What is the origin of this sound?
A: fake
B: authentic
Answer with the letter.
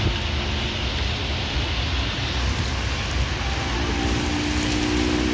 B